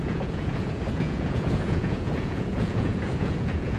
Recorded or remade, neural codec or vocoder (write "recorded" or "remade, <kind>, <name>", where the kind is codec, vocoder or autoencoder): remade, vocoder, Vocos